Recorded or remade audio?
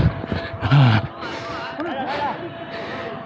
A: recorded